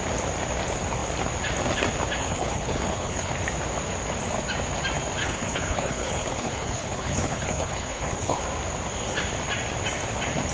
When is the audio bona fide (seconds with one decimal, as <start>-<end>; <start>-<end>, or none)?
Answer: 0.0-2.2; 3.3-5.2; 8.4-10.5